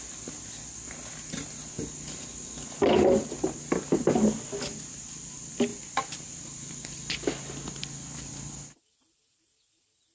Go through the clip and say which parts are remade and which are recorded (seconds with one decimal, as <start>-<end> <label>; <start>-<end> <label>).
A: 0.0-10.1 recorded